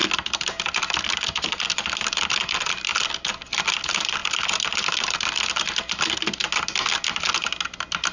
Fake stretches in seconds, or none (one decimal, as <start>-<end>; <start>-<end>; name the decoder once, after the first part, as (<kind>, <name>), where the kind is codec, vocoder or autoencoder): none